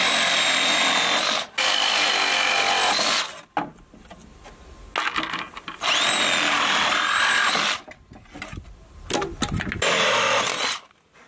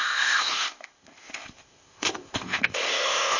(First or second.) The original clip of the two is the first